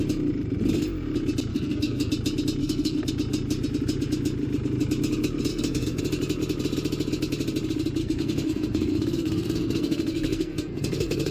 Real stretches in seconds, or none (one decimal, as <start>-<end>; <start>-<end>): 0.0-1.5; 2.1-2.6; 3.1-5.5; 6.0-8.0